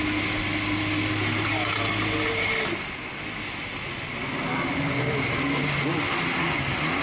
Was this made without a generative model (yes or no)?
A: yes